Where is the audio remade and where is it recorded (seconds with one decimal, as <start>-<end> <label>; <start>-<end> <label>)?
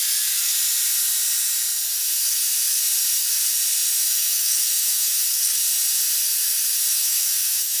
0.0-4.0 recorded; 4.0-5.2 remade; 5.2-6.9 recorded; 6.9-7.8 remade